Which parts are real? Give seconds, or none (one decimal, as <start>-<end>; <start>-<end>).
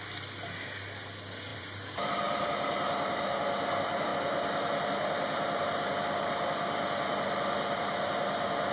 0.0-1.5; 2.1-8.7